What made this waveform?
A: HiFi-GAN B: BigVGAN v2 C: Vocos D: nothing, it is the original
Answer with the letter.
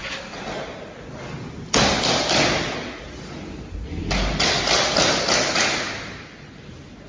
D